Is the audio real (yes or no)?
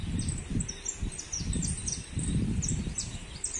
yes